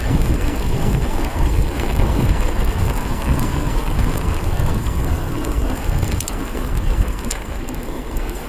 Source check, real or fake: fake